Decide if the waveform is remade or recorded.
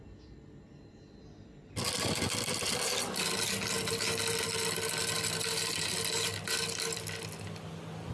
recorded